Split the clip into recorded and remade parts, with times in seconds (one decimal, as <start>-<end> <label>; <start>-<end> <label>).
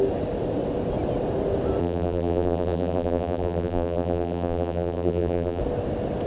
0.0-1.8 recorded; 1.8-5.6 remade; 5.6-6.3 recorded